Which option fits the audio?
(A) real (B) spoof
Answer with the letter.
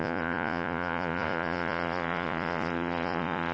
B